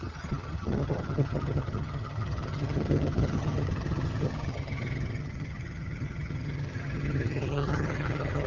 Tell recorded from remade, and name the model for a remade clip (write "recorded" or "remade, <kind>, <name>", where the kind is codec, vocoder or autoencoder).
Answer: remade, vocoder, HiFi-GAN